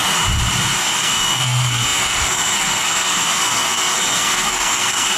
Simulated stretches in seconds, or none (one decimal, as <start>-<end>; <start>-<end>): 0.8-5.2